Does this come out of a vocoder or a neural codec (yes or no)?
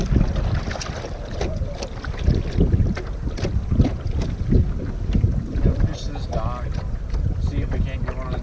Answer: no